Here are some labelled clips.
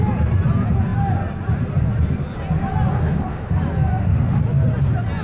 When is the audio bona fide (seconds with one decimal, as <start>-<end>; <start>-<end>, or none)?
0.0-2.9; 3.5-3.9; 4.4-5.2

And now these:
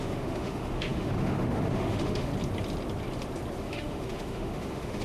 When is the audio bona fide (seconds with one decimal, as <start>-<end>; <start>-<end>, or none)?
2.3-3.6

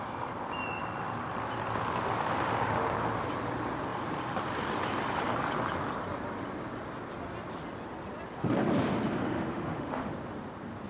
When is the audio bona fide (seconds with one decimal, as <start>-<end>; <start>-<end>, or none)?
0.0-9.2; 10.1-10.9

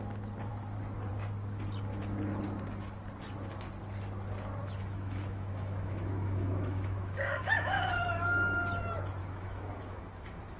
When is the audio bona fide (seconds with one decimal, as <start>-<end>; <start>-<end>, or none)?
0.0-4.6; 8.6-9.2

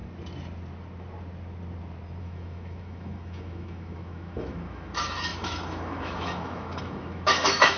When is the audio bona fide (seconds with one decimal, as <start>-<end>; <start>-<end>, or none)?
0.0-2.2

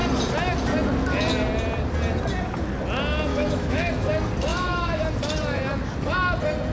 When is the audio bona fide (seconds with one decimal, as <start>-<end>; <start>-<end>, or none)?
0.0-3.3; 3.9-4.5; 5.0-6.7